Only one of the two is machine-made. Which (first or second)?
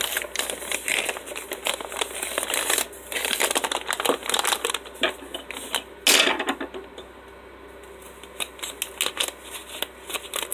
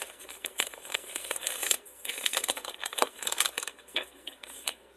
second